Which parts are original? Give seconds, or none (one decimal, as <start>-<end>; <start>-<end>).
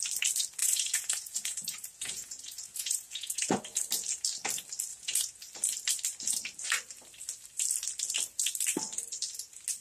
0.0-0.6; 3.6-4.9; 5.4-9.8